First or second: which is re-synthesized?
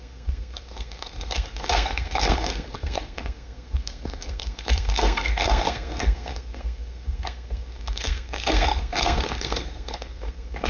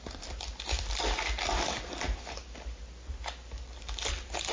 first